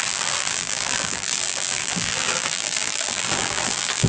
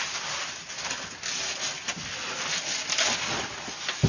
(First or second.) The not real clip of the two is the first